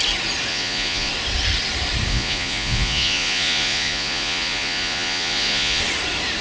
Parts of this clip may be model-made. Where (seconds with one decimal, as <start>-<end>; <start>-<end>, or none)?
0.5-1.1; 2.1-5.8